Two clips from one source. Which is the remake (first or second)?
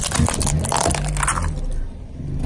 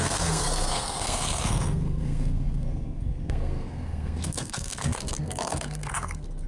second